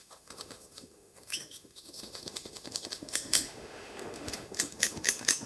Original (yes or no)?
no